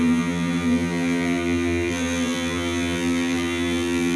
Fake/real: fake